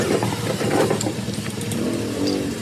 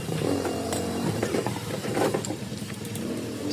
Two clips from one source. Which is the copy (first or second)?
second